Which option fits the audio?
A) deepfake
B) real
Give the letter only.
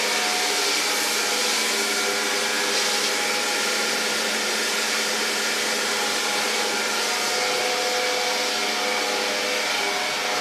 B